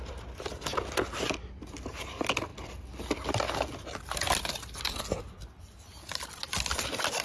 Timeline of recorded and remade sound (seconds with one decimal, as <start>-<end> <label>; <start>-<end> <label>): 0.0-7.2 recorded